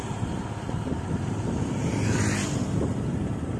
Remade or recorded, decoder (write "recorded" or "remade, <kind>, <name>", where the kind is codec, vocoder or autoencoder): recorded